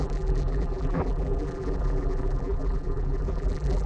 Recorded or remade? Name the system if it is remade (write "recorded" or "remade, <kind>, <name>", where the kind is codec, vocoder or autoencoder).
remade, vocoder, BigVGAN v2